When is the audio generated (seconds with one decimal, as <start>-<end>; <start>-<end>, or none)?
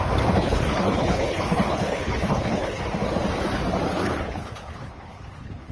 0.4-2.8; 3.9-5.7